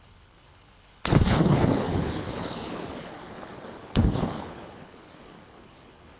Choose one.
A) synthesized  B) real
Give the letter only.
A